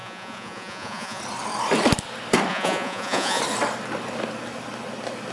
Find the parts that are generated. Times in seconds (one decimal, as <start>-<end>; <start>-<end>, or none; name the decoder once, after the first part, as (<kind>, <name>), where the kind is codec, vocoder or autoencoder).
0.0-1.2 (vocoder, Vocos); 2.5-3.4